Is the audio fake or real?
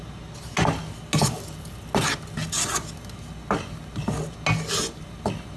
real